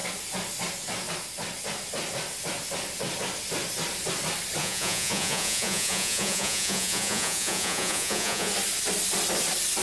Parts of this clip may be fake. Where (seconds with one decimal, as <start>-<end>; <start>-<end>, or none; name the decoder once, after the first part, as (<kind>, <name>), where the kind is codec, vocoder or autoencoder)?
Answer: 4.6-8.5 (vocoder, Vocos)